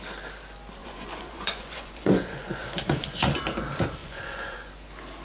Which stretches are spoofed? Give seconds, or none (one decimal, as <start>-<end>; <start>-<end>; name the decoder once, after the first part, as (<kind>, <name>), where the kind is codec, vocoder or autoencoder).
0.8-3.4 (vocoder, Vocos); 4.0-4.7